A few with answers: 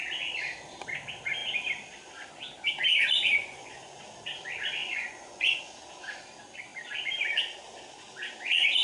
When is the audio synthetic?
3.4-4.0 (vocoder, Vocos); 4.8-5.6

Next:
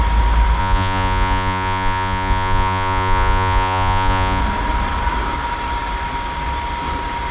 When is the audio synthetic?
0.6-4.4 (vocoder, Vocos)